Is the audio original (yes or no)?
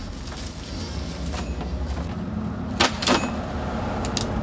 yes